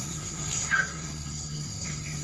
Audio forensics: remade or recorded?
remade